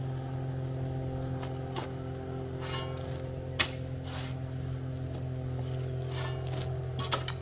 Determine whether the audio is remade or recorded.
recorded